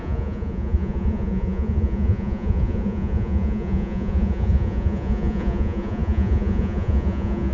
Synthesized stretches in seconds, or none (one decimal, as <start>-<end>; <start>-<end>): 0.0-7.5